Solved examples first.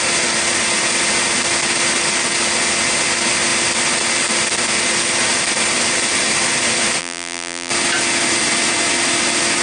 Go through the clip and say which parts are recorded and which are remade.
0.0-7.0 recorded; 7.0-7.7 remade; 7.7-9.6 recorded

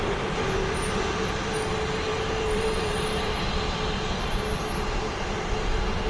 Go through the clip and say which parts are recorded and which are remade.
0.0-2.1 recorded; 2.1-3.4 remade; 3.4-6.1 recorded

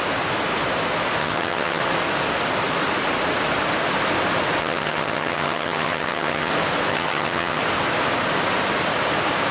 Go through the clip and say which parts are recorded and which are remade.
0.0-1.2 recorded; 1.2-1.8 remade; 1.8-4.6 recorded; 4.6-6.5 remade; 6.5-6.9 recorded; 6.9-7.6 remade; 7.6-9.5 recorded